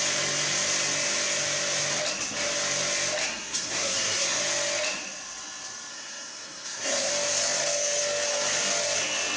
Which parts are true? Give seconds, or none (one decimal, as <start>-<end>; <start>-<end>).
0.0-3.2; 4.4-5.9; 7.1-9.4